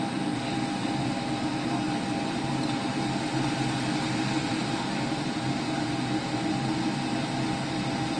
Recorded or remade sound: recorded